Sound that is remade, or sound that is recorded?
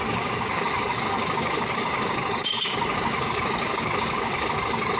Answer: remade